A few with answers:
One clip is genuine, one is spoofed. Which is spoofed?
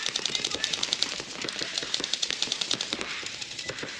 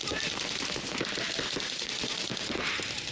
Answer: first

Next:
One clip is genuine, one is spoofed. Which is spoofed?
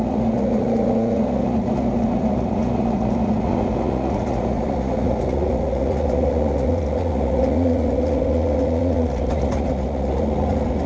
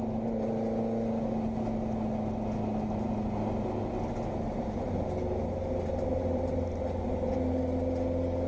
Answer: first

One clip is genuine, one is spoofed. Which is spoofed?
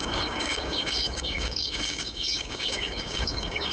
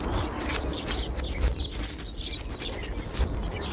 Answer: first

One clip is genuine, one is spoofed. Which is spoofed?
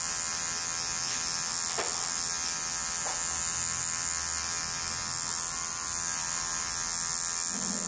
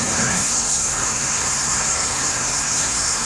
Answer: second